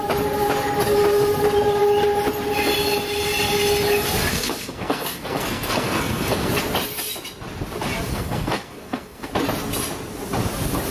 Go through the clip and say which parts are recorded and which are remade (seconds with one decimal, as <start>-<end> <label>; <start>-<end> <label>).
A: 0.0-4.3 recorded; 4.3-6.5 remade; 6.5-8.1 recorded; 8.1-9.3 remade; 9.3-10.9 recorded